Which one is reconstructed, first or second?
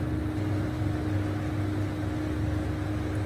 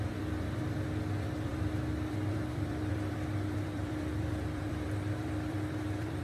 second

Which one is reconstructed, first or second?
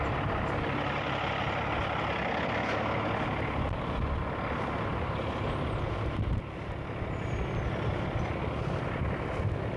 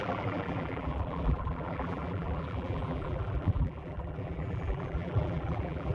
second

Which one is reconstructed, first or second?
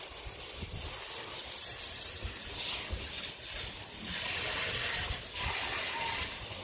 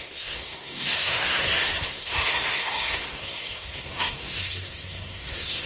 second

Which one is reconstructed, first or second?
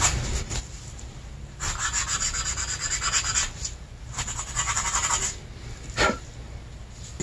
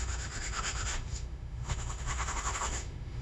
second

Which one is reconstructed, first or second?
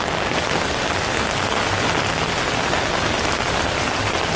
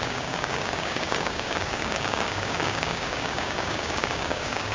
second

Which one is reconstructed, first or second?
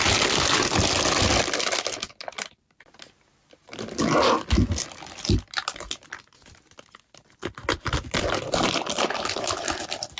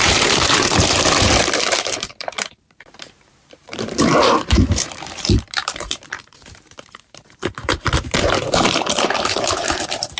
second